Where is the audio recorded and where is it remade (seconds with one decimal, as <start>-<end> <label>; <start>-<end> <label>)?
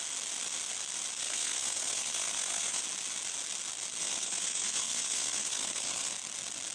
0.0-1.2 recorded; 1.2-2.8 remade; 2.8-4.0 recorded; 4.0-6.1 remade; 6.1-6.7 recorded